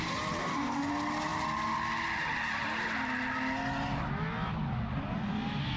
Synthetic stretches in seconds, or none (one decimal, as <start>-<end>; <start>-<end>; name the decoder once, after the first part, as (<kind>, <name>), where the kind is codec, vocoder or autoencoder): 0.4-0.9 (codec, DAC)